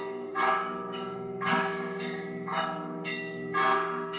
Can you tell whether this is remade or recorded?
remade